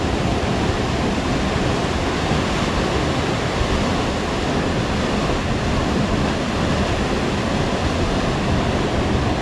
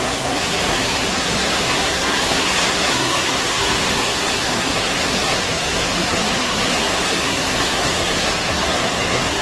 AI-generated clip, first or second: second